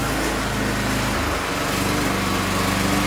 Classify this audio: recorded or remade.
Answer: recorded